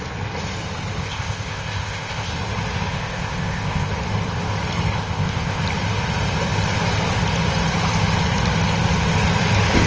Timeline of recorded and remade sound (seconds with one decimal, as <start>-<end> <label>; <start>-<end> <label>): 0.0-1.0 recorded; 1.0-2.3 remade; 2.3-2.9 recorded; 2.9-3.9 remade; 3.9-5.0 recorded; 5.0-5.6 remade; 5.6-9.9 recorded